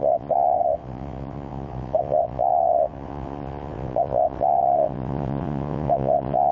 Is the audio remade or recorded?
remade